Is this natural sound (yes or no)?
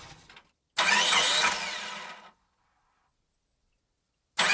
yes